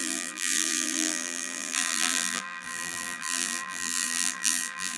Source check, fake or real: fake